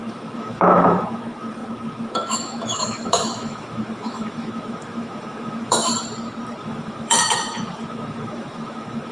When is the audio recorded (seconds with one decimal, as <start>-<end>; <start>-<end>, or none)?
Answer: 5.9-6.6